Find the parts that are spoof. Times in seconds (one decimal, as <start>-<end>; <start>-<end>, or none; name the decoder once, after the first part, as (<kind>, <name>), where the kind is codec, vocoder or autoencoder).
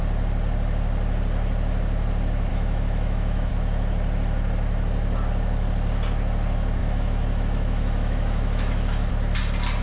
2.5-3.5 (autoencoder, DAC-VAE); 6.8-9.1